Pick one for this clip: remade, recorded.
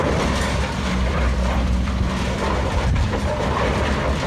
remade